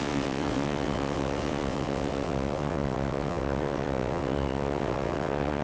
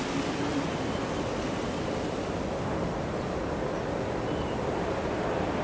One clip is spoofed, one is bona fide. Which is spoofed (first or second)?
first